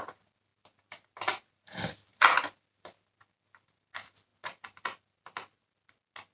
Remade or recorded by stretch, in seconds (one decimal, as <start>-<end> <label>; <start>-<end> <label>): 0.0-6.3 recorded